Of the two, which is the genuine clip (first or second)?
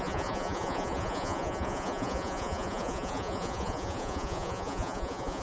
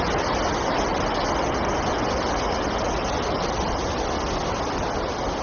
second